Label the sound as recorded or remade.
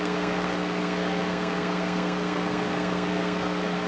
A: remade